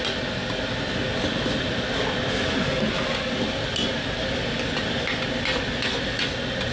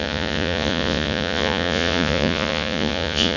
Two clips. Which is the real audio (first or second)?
first